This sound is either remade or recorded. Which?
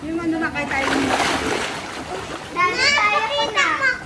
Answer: recorded